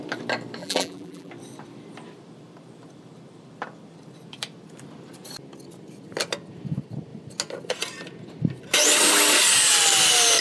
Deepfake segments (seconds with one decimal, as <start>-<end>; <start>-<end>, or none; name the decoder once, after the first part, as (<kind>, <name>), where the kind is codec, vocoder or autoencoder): 0.6-1.3 (vocoder, BigVGAN v2)